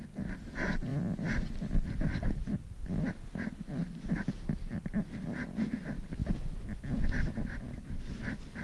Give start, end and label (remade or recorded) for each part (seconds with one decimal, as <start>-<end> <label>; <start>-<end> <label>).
0.0-0.9 recorded; 0.9-4.8 remade; 4.8-8.6 recorded